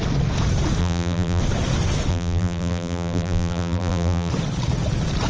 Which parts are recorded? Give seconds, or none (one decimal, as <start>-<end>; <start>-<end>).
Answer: 0.0-0.8; 1.4-2.1; 4.3-5.3